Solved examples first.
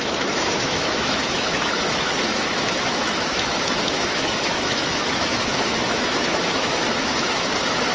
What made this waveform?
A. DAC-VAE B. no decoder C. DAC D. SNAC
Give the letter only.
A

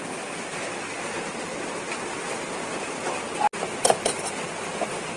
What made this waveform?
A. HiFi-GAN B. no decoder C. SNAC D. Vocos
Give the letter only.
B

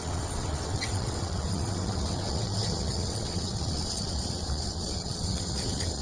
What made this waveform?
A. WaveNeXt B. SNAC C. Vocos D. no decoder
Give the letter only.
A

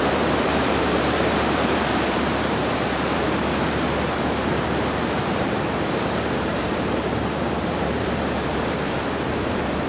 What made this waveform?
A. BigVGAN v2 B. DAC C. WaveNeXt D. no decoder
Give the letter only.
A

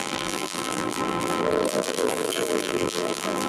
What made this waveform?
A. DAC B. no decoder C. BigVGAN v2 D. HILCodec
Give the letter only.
C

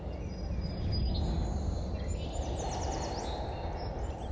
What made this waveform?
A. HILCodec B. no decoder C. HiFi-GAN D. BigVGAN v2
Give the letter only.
B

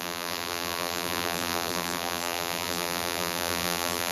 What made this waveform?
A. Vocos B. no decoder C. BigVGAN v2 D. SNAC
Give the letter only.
C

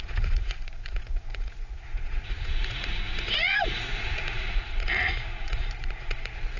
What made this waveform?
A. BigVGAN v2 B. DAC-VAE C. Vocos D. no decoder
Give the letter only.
C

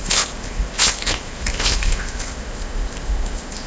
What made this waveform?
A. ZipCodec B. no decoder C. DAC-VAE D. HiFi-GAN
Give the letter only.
A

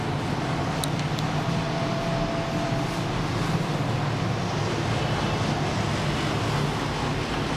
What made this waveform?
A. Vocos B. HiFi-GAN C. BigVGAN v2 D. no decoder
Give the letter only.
D